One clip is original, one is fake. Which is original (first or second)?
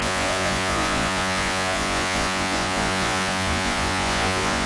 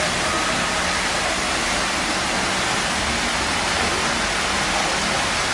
second